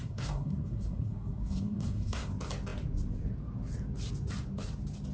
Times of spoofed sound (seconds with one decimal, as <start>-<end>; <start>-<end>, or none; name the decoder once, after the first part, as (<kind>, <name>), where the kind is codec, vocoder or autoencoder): 0.0-2.3 (codec, SNAC)